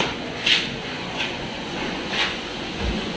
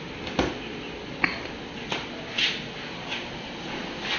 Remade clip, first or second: first